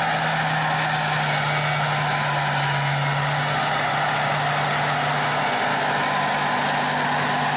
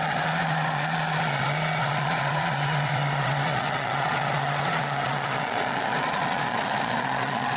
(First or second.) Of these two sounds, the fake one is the second